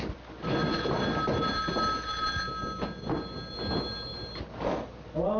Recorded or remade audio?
recorded